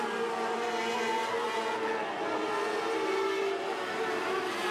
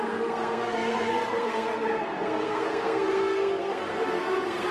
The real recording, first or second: first